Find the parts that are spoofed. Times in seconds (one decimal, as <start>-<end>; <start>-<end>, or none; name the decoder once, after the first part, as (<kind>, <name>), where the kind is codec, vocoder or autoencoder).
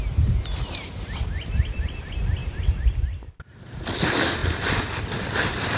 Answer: 1.2-1.8 (vocoder, BigVGAN v2); 2.4-3.3; 4.4-5.1